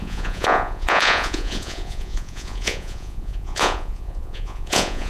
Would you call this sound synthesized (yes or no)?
yes